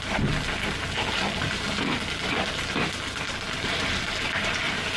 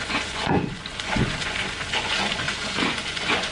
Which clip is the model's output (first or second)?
second